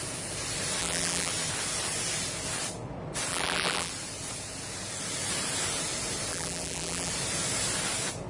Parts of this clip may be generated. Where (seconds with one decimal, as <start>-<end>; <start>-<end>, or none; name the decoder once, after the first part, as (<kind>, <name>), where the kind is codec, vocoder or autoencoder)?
0.8-1.3 (vocoder, BigVGAN v2); 3.3-3.9; 6.3-7.1